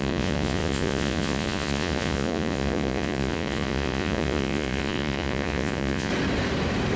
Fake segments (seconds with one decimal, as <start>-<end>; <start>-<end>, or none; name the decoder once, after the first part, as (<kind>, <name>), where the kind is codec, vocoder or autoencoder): 0.0-6.1 (vocoder, Vocos)